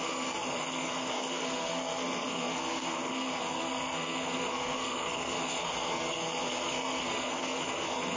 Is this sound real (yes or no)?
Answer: no